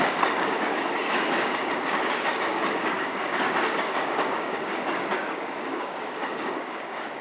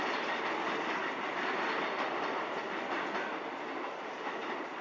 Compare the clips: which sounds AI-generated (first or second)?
first